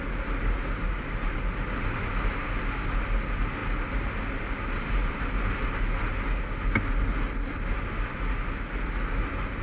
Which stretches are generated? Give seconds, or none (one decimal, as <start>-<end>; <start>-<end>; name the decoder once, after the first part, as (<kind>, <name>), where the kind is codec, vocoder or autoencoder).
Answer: none

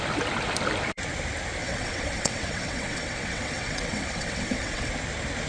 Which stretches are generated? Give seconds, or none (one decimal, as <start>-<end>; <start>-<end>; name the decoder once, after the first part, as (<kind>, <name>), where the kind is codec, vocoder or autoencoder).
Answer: 1.6-4.9 (vocoder, WaveNeXt)

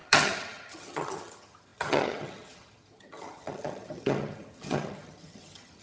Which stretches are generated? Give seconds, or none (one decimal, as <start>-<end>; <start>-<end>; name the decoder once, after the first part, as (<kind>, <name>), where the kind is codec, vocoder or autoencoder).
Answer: 0.0-5.8 (vocoder, HiFi-GAN)

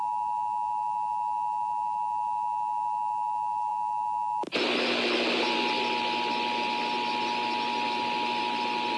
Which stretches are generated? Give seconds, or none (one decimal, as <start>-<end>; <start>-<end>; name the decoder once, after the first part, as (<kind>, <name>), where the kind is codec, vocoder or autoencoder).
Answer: none